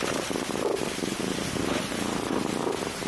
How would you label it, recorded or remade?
recorded